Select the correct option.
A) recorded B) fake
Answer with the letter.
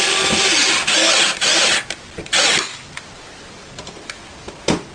A